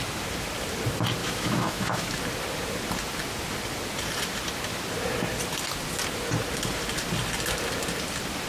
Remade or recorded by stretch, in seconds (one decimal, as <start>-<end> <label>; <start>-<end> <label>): 0.0-1.2 recorded; 1.2-2.1 remade; 2.1-8.5 recorded